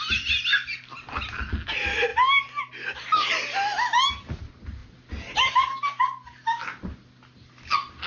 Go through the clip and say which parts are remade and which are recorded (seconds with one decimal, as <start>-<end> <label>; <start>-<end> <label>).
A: 0.0-8.1 recorded